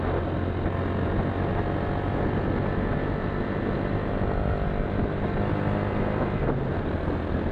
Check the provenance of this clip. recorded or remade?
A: recorded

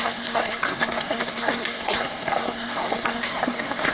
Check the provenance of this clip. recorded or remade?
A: remade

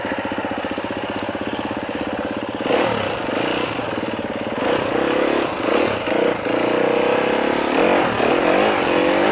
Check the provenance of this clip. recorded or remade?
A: recorded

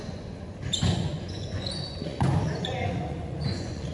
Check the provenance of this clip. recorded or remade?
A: remade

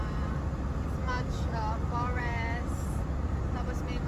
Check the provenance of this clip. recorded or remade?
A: recorded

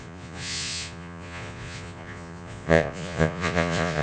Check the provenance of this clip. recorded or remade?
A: remade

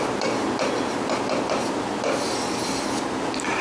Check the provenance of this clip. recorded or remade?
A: recorded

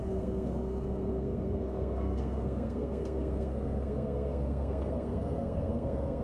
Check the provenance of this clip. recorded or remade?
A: remade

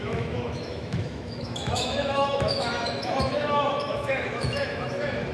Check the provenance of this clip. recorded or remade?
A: remade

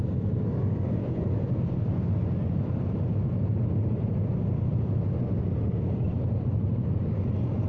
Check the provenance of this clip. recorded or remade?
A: recorded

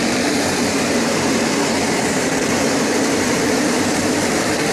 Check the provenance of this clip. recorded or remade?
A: remade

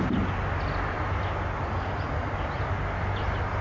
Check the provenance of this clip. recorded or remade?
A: recorded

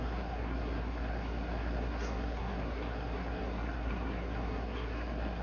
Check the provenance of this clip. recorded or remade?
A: remade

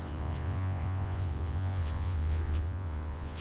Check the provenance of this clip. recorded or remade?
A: remade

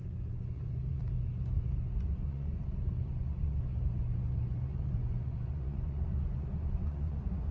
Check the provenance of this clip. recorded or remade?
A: remade